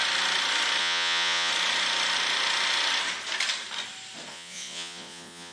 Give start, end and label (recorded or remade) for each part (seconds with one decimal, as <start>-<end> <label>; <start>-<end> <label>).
0.0-0.8 recorded; 0.8-1.5 remade; 1.5-4.3 recorded; 4.3-5.5 remade